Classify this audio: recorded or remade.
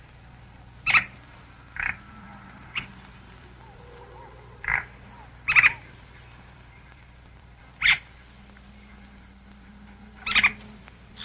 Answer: remade